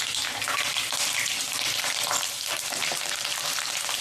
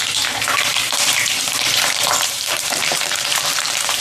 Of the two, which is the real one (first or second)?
first